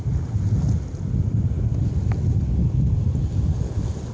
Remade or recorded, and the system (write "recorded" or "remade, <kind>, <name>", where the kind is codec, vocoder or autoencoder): recorded